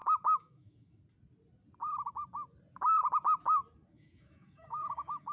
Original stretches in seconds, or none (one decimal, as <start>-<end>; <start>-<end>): 1.0-3.9